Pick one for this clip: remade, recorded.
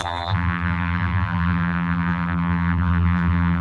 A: remade